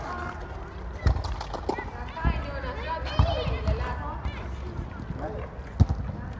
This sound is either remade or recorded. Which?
recorded